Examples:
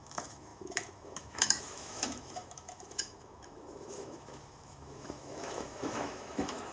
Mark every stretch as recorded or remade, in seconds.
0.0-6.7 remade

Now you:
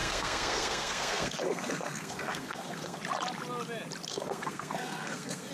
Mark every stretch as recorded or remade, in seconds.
0.0-3.0 remade; 3.0-4.1 recorded; 4.1-5.5 remade

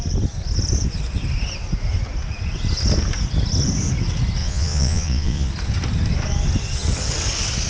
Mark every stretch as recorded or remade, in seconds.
0.0-4.4 recorded; 4.4-5.5 remade; 5.5-7.7 recorded

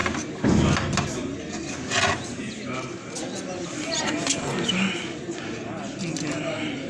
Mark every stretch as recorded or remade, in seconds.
0.0-6.9 recorded

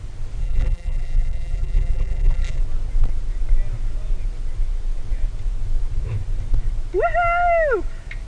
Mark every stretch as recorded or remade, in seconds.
0.0-0.4 recorded; 0.4-2.6 remade; 2.6-8.3 recorded

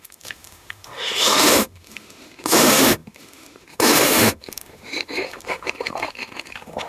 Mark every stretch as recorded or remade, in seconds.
0.0-6.9 remade

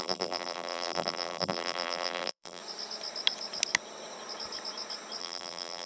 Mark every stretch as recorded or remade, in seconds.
0.0-2.6 remade; 2.6-5.2 recorded; 5.2-5.9 remade

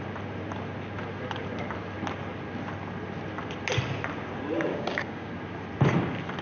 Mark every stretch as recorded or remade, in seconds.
0.0-4.7 recorded; 4.7-5.3 remade; 5.3-6.4 recorded